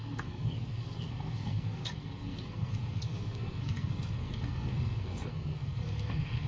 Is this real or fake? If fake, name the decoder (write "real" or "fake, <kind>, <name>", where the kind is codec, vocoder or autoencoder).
fake, codec, SNAC